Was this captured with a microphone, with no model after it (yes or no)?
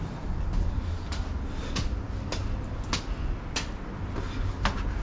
yes